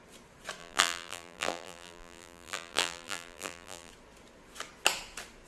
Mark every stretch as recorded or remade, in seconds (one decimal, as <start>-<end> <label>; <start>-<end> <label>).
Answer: 0.0-0.6 recorded; 0.6-3.9 remade; 3.9-5.5 recorded